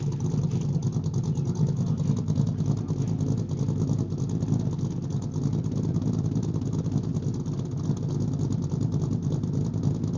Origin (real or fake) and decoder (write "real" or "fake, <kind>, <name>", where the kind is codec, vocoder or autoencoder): real